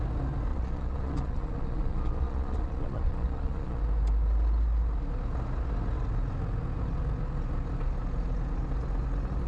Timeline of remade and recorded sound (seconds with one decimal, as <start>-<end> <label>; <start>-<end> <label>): 0.0-0.5 recorded; 0.5-3.8 remade; 3.8-9.5 recorded